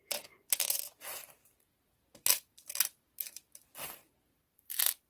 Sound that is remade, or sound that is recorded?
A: remade